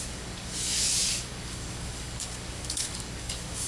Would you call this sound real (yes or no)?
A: no